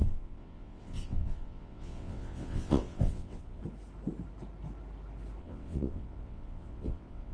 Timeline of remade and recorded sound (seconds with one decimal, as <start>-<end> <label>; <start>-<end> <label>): 0.0-3.6 remade; 3.6-5.4 recorded; 5.4-7.3 remade